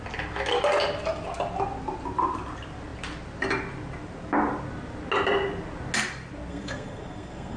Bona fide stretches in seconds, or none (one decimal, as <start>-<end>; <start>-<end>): 0.0-6.5